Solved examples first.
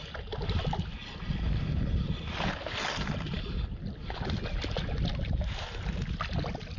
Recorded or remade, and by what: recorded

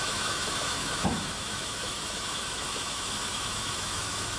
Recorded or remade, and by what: remade, autoencoder, DAC-VAE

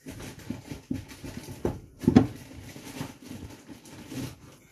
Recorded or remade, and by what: recorded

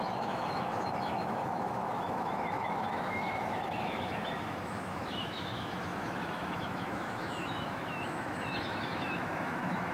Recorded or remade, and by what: remade, autoencoder, DAC-VAE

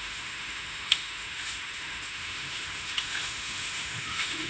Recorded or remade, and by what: remade, autoencoder, DAC-VAE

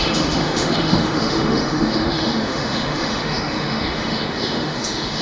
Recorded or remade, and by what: remade, autoencoder, DAC-VAE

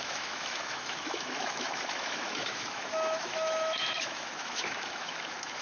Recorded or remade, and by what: remade, autoencoder, DAC-VAE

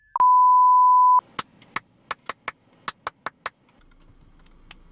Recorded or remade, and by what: recorded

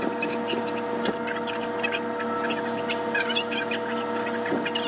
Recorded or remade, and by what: recorded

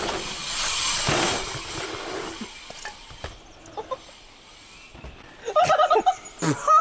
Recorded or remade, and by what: recorded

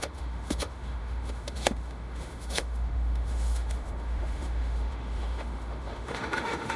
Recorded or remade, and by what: remade, autoencoder, DAC-VAE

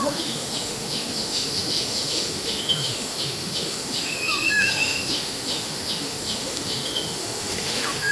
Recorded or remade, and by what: remade, autoencoder, DAC-VAE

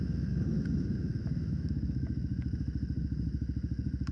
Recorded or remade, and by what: remade, autoencoder, DAC-VAE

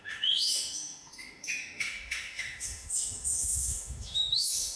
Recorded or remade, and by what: remade, autoencoder, DAC-VAE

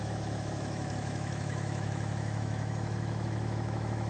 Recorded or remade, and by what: remade, autoencoder, DAC-VAE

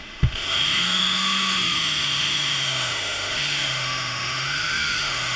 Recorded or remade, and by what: remade, autoencoder, DAC-VAE